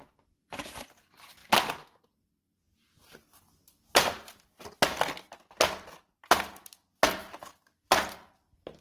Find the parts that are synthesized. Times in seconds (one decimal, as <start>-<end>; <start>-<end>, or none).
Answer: 7.7-8.8